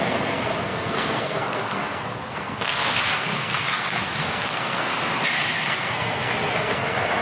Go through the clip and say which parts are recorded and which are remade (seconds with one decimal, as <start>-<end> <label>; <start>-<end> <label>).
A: 0.0-4.9 remade; 4.9-5.6 recorded; 5.6-7.2 remade